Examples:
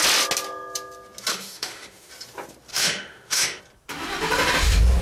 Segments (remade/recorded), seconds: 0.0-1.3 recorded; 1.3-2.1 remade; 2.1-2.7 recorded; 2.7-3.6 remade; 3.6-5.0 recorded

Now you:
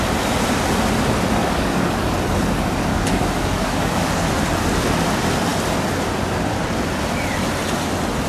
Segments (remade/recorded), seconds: 0.0-1.4 recorded; 1.4-2.1 remade; 2.1-2.9 recorded; 2.9-4.1 remade; 4.1-8.3 recorded

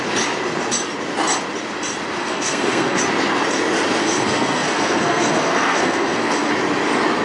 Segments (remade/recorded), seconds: 0.0-2.2 recorded; 2.2-3.0 remade; 3.0-4.0 recorded; 4.0-6.5 remade; 6.5-7.2 recorded

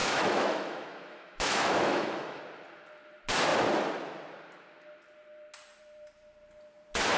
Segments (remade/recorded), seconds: 0.0-2.4 remade; 2.4-7.2 recorded

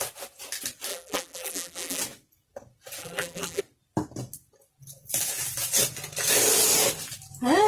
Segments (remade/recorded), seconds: 0.0-0.9 recorded; 0.9-2.0 remade; 2.0-3.0 recorded; 3.0-3.6 remade; 3.6-7.7 recorded

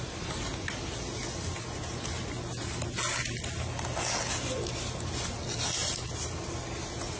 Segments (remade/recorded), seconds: 0.0-7.2 recorded

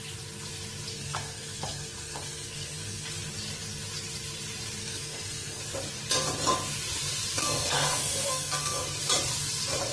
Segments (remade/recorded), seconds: 0.0-0.9 recorded; 0.9-3.1 remade; 3.1-4.8 recorded; 4.8-5.6 remade; 5.6-7.4 recorded; 7.4-9.0 remade; 9.0-9.9 recorded